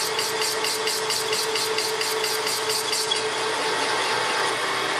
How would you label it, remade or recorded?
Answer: recorded